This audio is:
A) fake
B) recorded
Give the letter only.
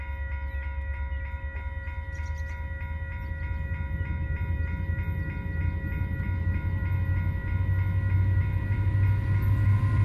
B